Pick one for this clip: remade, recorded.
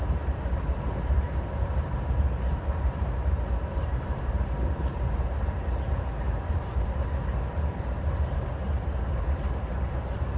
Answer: remade